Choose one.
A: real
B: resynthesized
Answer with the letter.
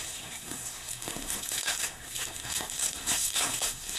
B